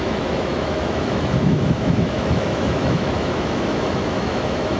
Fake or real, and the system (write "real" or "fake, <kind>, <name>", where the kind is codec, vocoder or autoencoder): fake, autoencoder, DAC-VAE